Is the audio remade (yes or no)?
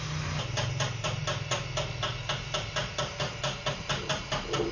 no